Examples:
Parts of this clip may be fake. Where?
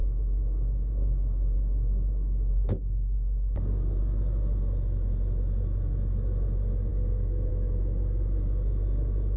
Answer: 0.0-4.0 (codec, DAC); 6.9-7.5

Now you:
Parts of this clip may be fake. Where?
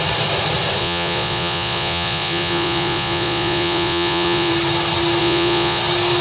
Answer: 0.8-4.5 (vocoder, Vocos); 5.2-5.8